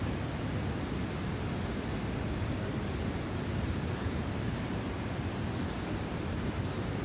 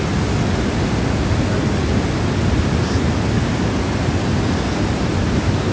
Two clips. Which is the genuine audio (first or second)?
second